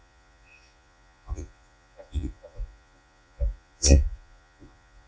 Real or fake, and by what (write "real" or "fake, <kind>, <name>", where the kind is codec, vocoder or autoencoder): fake, vocoder, Vocos